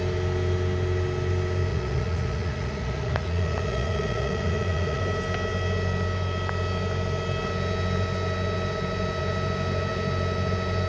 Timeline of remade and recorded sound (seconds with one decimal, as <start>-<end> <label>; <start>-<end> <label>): 0.0-1.7 recorded; 1.7-5.0 remade; 5.0-10.9 recorded